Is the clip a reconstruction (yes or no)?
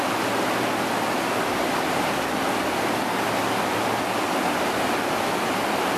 no